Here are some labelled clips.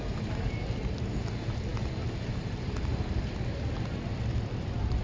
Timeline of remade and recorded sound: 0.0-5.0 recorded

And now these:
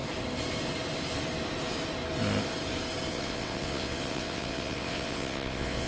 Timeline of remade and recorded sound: 0.0-3.1 recorded; 3.1-5.9 remade

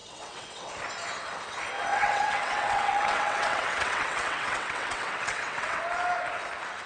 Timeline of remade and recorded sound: 0.0-0.7 remade; 0.7-1.9 recorded; 1.9-5.8 remade; 5.8-6.9 recorded

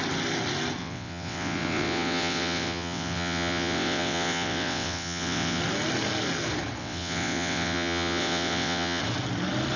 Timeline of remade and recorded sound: 0.0-0.8 recorded; 0.8-5.6 remade; 5.6-6.8 recorded; 6.8-9.0 remade; 9.0-9.8 recorded

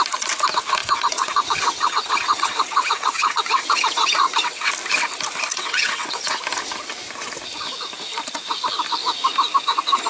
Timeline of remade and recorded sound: 0.0-0.8 recorded; 0.8-4.7 remade; 4.7-5.5 recorded; 5.5-6.4 remade; 6.4-10.1 recorded

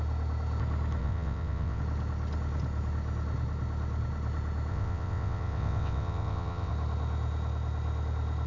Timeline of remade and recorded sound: 0.0-1.0 recorded; 1.0-1.8 remade; 1.8-4.7 recorded; 4.7-6.7 remade; 6.7-8.5 recorded

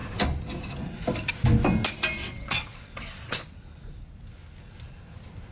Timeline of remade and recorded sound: 0.0-2.2 recorded; 2.2-3.4 remade; 3.4-5.5 recorded